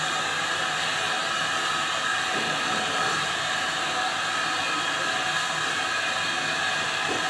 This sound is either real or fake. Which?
real